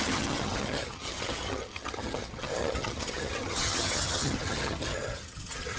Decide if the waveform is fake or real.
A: fake